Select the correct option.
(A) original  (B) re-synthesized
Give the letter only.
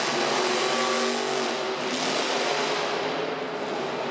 A